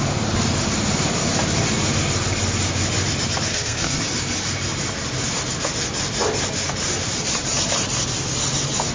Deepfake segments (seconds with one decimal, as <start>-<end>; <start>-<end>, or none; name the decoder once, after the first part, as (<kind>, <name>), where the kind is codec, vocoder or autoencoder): 3.5-4.0 (codec, SNAC)